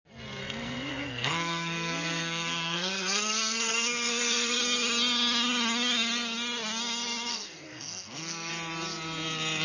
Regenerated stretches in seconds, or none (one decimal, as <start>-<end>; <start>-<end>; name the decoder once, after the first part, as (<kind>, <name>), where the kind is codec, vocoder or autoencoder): 0.4-4.6 (codec, SNAC); 7.3-8.5